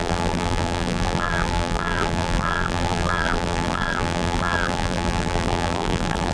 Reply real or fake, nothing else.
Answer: fake